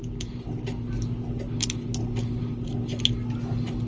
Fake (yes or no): no